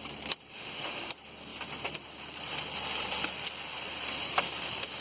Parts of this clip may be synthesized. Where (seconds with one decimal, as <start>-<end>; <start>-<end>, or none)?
0.5-1.1